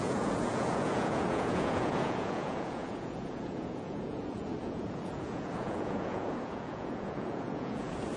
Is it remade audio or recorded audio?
remade